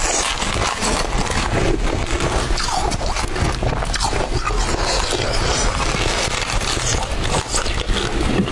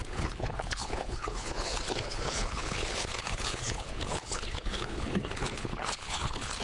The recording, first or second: first